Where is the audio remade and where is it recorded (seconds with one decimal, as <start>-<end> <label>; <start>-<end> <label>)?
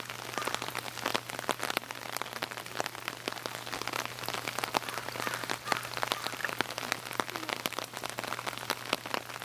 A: 0.0-9.4 recorded